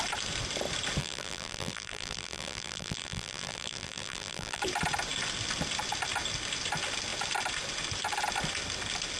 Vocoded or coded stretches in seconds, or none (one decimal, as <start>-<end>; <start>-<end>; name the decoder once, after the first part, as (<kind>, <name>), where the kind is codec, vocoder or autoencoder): 1.0-4.6 (vocoder, BigVGAN v2)